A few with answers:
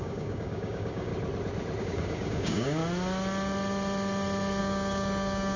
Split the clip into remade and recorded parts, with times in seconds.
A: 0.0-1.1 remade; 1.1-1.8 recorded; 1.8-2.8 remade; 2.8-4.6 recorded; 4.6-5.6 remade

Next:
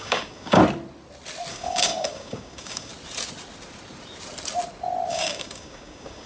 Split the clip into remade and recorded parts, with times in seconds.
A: 0.0-0.6 remade; 0.6-1.5 recorded; 1.5-2.9 remade; 2.9-5.1 recorded; 5.1-6.3 remade

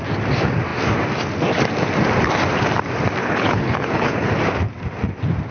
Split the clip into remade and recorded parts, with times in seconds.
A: 0.0-3.2 recorded; 3.2-4.3 remade; 4.3-5.5 recorded